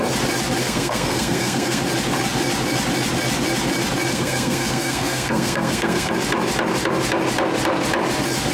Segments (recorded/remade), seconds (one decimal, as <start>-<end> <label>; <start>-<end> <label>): 0.0-0.6 recorded; 0.6-1.8 remade; 1.8-4.1 recorded; 4.1-6.1 remade; 6.1-8.5 recorded